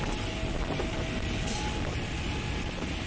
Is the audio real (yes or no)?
yes